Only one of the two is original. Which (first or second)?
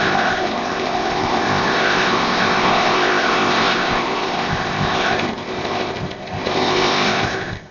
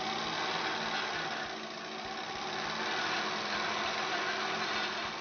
second